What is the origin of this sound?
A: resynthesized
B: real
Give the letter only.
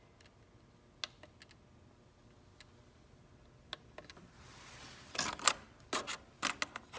B